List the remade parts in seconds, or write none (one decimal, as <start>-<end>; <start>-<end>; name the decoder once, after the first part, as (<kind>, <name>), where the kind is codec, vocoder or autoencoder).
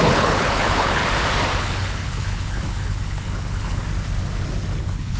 0.0-1.0 (codec, HILCodec); 1.6-3.8; 4.8-5.2